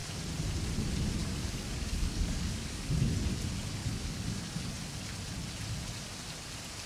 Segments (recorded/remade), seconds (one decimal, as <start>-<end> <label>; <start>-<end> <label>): 0.0-1.2 recorded; 1.2-3.0 remade; 3.0-3.8 recorded; 3.8-4.7 remade; 4.7-6.9 recorded